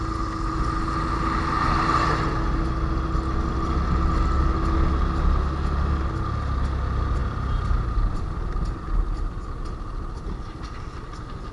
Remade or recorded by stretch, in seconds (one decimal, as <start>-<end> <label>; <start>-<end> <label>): 0.0-11.5 recorded